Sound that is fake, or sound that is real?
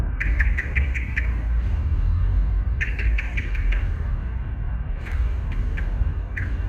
fake